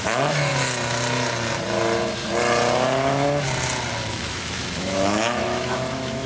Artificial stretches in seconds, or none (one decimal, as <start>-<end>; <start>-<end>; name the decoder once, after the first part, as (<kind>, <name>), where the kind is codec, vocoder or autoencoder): 0.0-0.5 (autoencoder, DAC-VAE); 4.3-6.3